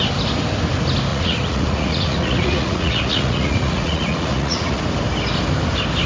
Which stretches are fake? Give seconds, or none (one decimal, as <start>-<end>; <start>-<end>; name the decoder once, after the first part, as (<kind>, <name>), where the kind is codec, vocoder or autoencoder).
1.1-4.8 (vocoder, Vocos)